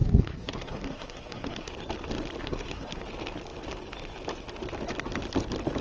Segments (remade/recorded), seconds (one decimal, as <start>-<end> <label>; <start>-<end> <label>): 0.0-1.7 remade; 1.7-2.4 recorded; 2.4-3.0 remade; 3.0-5.8 recorded